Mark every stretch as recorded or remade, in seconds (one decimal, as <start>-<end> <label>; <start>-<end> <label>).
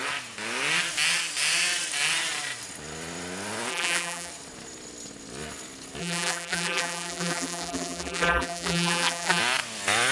0.0-3.7 recorded; 3.7-4.3 remade; 4.3-6.0 recorded; 6.0-9.4 remade; 9.4-10.1 recorded